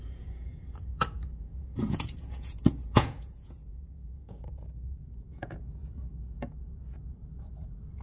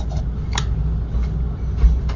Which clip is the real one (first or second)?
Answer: second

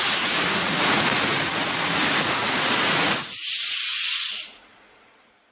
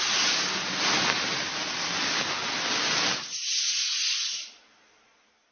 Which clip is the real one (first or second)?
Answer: second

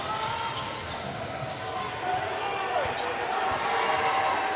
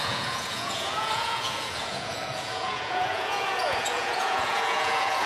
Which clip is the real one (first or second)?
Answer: first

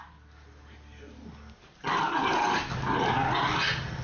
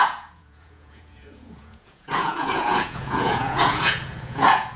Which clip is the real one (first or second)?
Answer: first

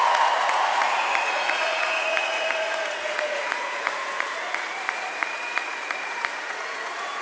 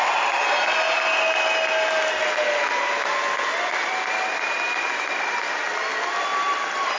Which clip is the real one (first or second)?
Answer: second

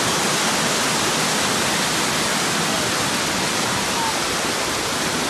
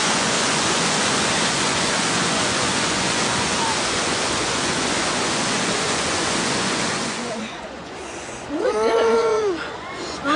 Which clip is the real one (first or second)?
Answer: first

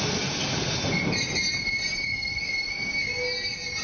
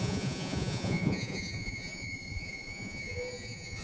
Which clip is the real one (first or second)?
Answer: first